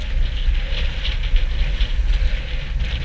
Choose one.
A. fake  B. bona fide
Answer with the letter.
B